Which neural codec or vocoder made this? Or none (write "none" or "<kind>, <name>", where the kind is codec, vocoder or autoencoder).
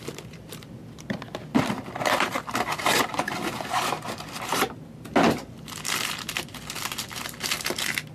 none